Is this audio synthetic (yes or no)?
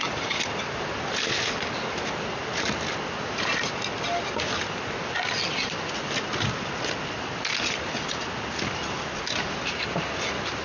no